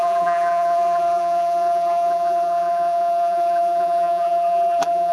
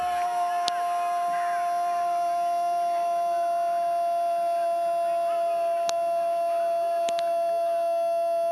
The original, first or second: second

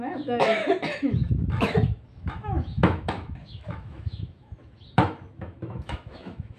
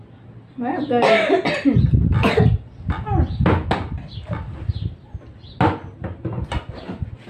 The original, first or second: second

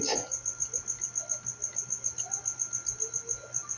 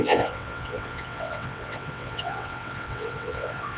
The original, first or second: first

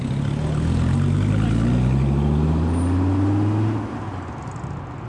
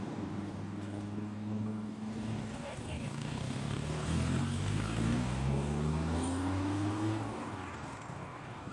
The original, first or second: first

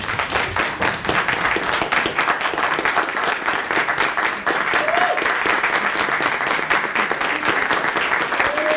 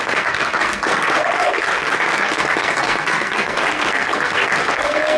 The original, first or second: first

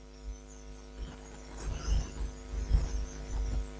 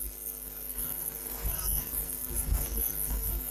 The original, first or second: first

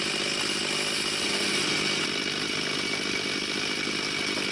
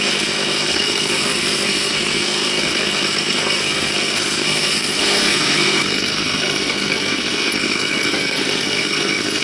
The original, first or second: first